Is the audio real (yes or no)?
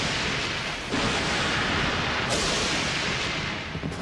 yes